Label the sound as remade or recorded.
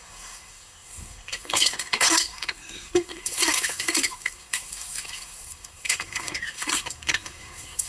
remade